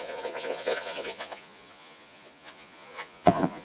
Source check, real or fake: fake